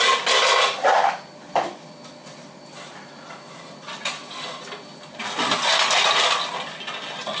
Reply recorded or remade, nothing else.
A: recorded